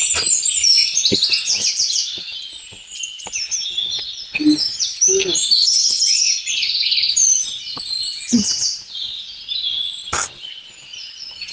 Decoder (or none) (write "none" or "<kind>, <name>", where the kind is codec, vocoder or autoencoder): none